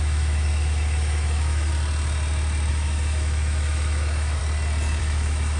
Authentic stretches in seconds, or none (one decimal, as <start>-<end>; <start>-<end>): 1.7-2.7; 4.4-5.0